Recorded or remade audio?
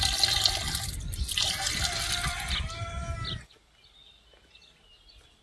recorded